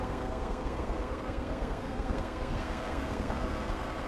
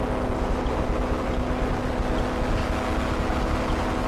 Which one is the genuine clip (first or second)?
second